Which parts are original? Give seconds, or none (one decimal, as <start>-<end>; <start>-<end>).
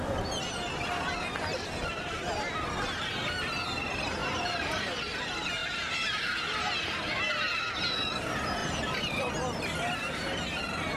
0.0-4.2; 4.8-8.6; 9.3-11.0